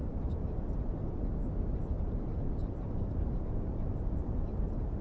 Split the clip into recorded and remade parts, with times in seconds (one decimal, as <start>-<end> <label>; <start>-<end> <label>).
0.0-1.9 recorded; 1.9-5.0 remade